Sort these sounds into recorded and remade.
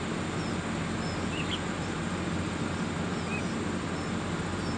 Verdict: recorded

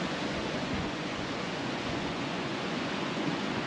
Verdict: remade